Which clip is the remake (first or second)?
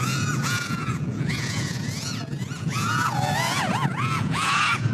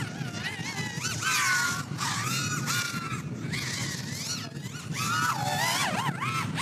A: first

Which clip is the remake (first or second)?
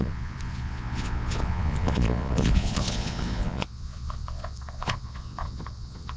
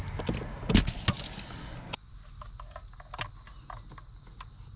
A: first